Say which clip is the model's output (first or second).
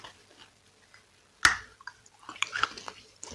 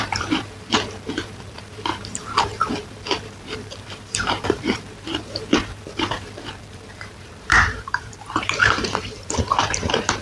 second